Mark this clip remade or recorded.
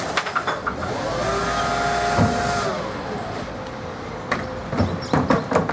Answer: recorded